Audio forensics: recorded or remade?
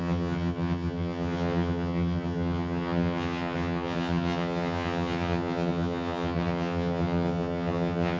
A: remade